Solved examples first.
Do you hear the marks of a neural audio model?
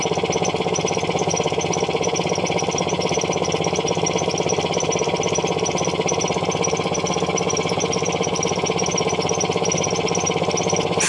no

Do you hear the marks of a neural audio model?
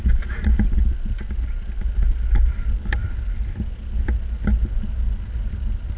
no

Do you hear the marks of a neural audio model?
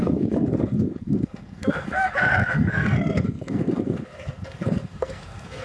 yes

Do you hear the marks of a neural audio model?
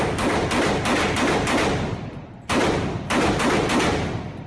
no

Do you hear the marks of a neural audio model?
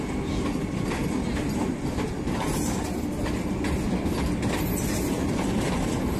no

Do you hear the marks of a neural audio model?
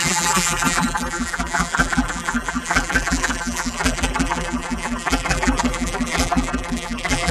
yes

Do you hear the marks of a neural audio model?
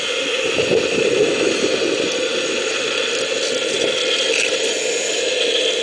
no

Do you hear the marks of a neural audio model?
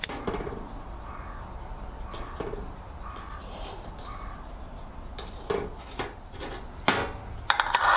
no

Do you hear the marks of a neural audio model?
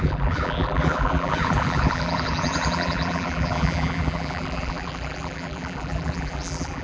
yes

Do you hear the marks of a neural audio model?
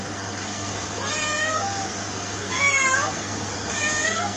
yes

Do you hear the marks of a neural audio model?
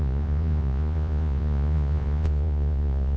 yes